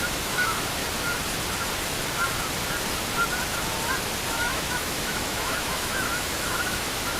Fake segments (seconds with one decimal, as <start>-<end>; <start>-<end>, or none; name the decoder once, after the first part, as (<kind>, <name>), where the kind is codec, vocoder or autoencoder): 0.0-0.8 (autoencoder, DAC-VAE); 4.3-7.2

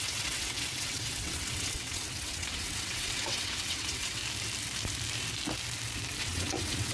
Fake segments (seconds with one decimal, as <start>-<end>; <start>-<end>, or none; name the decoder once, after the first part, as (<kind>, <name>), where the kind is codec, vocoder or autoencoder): 0.0-4.2 (vocoder, WaveNeXt); 6.2-6.9